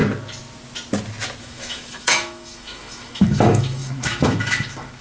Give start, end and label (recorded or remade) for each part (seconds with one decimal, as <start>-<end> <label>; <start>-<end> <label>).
0.0-1.4 recorded; 1.4-5.0 remade